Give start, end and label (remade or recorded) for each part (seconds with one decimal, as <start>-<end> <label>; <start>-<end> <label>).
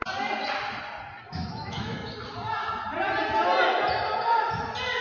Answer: 0.0-1.3 recorded; 1.3-2.0 remade; 2.0-5.0 recorded